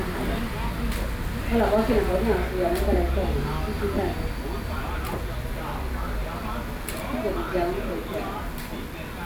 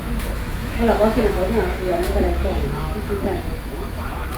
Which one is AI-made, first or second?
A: second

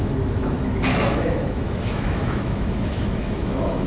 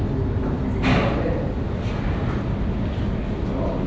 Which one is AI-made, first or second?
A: first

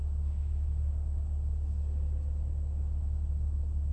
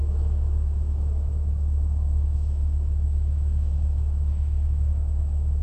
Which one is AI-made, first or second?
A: second